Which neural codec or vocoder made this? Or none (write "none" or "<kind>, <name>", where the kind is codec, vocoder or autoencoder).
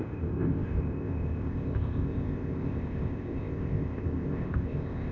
codec, ZipCodec